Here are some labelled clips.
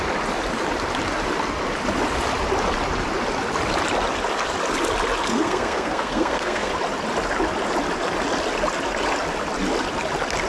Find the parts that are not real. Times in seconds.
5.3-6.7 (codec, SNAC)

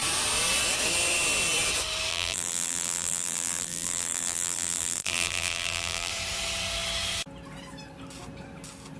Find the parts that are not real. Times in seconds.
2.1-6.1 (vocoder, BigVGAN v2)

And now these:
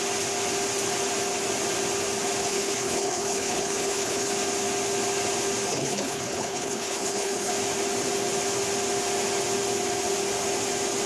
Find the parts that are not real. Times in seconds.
2.4-4.3 (codec, HILCodec); 5.7-7.5

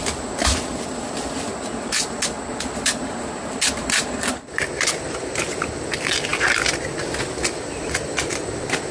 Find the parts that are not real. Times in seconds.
0.0-1.5 (vocoder, BigVGAN v2); 2.6-6.3; 7.0-8.9

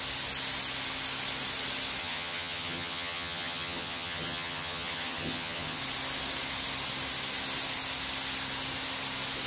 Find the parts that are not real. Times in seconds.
2.0-5.8 (vocoder, HiFi-GAN)

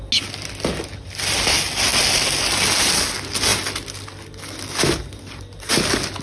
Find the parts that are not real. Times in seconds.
none